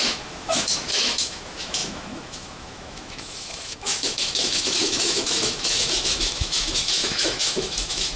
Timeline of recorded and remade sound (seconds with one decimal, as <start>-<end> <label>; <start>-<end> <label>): 0.0-8.2 remade